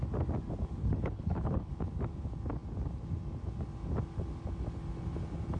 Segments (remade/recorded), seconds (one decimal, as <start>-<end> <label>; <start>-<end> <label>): 0.0-0.8 recorded; 0.8-1.7 remade; 1.7-5.6 recorded